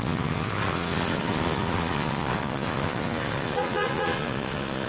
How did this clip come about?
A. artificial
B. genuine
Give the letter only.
A